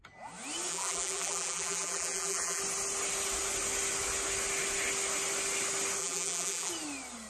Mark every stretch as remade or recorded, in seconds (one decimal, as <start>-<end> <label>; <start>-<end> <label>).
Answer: 0.0-0.7 recorded; 0.7-2.6 remade; 2.6-6.0 recorded; 6.0-6.7 remade; 6.7-7.3 recorded